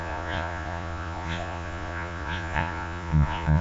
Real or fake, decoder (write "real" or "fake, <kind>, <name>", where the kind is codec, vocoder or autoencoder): fake, vocoder, Vocos